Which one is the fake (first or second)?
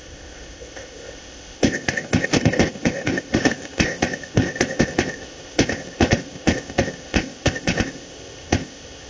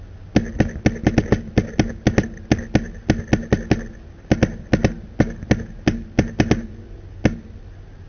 first